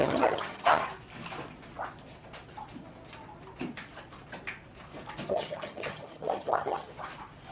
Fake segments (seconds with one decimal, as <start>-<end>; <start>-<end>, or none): 0.0-0.8; 5.3-6.9